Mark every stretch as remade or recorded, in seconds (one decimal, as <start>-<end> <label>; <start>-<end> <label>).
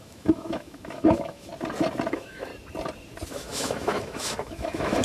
0.0-1.5 remade; 1.5-2.1 recorded; 2.1-2.5 remade; 2.5-3.3 recorded; 3.3-5.0 remade